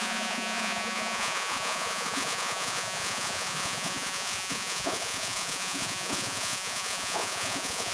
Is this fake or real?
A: fake